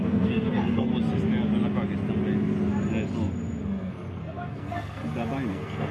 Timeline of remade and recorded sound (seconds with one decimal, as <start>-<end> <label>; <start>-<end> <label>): 0.0-0.9 remade; 0.9-3.6 recorded; 3.6-5.0 remade; 5.0-5.5 recorded; 5.5-5.9 remade